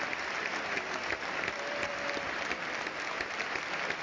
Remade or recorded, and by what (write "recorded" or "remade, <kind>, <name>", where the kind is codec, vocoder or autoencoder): recorded